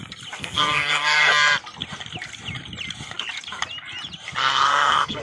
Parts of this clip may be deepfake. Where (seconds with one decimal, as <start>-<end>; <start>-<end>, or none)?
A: 0.4-1.3; 4.4-5.2